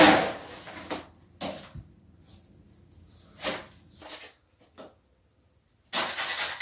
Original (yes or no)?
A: yes